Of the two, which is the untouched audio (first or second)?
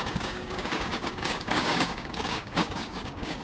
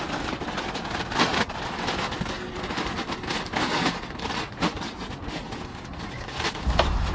second